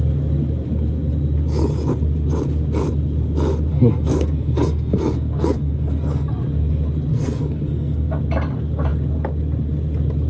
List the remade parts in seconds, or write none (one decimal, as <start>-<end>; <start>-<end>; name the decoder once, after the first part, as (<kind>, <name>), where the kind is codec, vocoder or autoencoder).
3.7-6.3 (codec, SNAC); 7.1-8.2